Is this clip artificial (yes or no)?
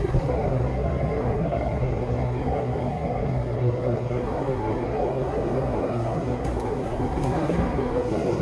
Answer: yes